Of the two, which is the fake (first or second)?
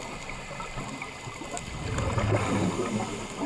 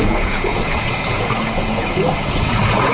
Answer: second